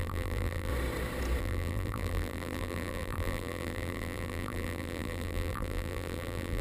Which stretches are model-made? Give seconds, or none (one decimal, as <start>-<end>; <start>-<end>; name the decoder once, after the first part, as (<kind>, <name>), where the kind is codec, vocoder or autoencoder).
0.0-0.7 (vocoder, BigVGAN v2); 1.4-6.6